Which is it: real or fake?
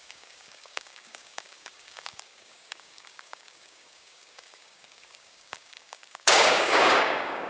fake